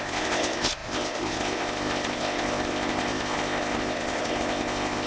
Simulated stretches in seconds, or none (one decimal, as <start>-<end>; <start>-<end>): 0.0-5.1